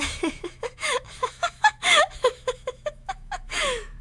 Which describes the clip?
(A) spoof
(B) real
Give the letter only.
A